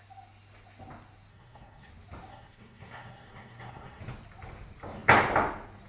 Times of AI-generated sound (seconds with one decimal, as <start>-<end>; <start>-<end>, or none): 1.3-1.9; 2.3-4.0